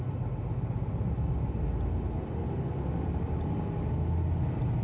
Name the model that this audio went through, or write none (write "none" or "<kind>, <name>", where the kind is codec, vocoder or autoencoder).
none